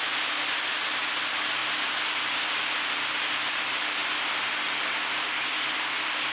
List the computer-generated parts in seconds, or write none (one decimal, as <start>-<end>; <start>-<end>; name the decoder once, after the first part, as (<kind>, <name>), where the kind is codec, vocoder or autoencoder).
none